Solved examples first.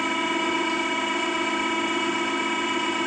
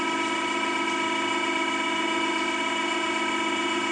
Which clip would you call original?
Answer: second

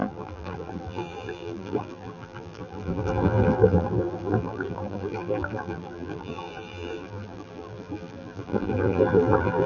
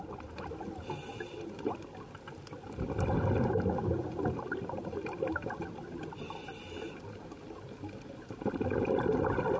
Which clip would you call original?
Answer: second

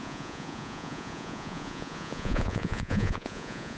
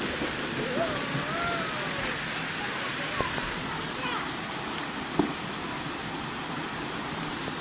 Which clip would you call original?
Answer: second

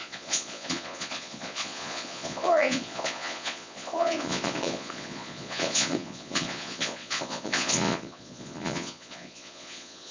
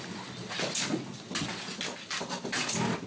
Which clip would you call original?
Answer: second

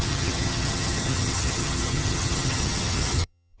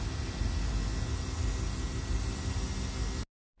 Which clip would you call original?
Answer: second